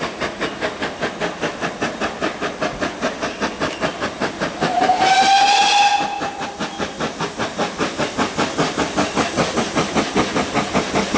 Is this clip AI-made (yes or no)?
no